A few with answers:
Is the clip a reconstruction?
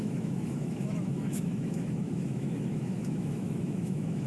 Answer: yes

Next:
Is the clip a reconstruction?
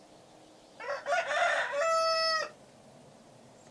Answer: no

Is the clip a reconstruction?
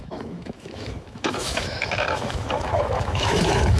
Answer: yes